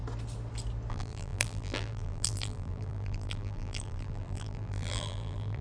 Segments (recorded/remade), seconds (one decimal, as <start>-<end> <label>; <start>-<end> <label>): 0.0-0.9 recorded; 0.9-5.6 remade